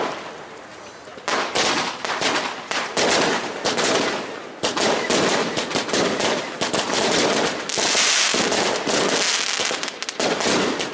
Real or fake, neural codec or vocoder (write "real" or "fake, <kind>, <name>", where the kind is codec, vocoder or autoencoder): real